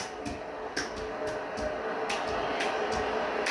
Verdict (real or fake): real